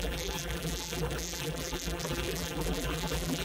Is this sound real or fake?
fake